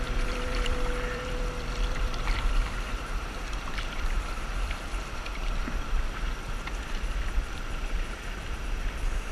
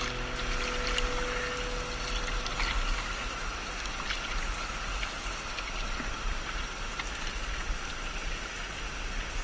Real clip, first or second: second